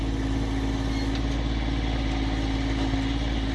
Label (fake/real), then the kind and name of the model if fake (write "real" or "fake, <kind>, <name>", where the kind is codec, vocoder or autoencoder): real